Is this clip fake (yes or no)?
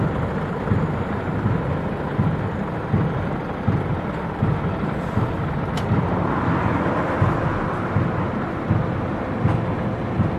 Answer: no